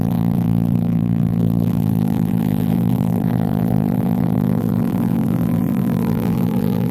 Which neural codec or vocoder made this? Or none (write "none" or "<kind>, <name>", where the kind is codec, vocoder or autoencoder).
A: vocoder, BigVGAN v2